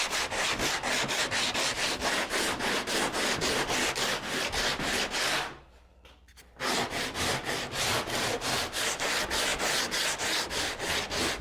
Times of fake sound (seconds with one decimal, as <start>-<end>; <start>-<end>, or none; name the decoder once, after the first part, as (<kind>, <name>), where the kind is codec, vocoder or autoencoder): 9.5-10.5 (vocoder, BigVGAN v2)